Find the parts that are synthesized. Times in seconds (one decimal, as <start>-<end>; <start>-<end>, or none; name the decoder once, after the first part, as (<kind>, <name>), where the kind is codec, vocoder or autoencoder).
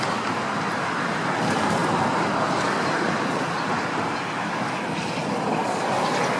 none